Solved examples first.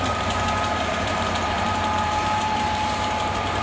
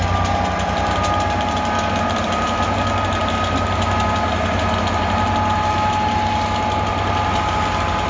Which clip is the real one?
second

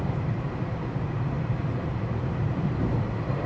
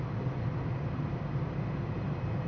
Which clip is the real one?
second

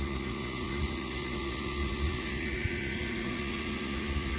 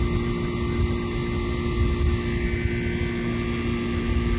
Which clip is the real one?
second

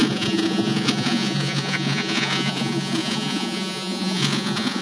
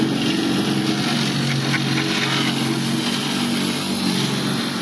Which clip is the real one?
second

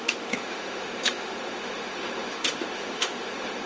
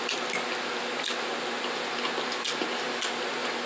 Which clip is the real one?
second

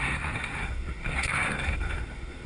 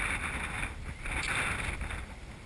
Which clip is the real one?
second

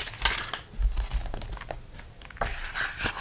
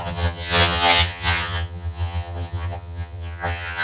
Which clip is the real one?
first